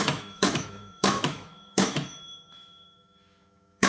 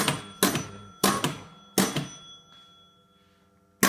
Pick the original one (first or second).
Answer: second